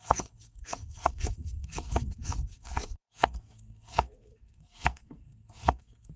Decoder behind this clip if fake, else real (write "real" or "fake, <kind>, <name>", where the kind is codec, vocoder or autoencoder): fake, codec, SNAC